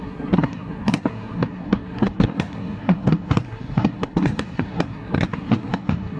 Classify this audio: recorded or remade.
remade